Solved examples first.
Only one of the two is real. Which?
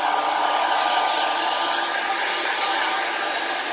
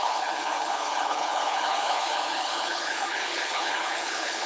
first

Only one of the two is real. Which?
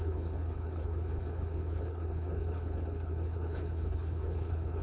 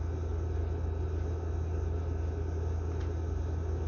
second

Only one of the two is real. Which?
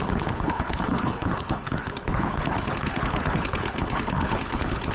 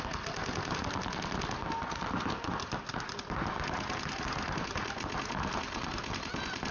second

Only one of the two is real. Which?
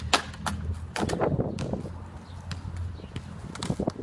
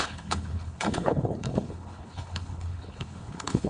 first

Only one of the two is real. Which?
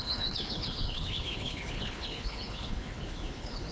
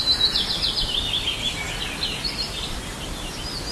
second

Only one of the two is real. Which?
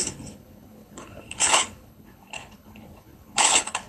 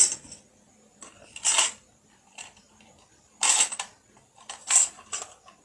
second